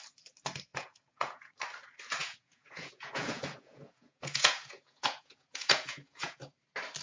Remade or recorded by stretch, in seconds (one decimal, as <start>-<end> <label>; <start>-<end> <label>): 0.0-0.7 recorded; 0.7-1.5 remade; 1.5-2.2 recorded; 2.2-6.4 remade; 6.4-7.0 recorded